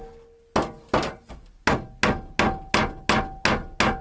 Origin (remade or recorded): recorded